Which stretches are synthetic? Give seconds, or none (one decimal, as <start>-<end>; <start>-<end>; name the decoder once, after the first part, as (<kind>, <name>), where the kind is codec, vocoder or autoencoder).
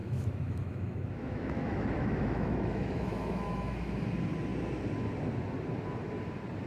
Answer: 0.0-4.0 (autoencoder, DAC-VAE)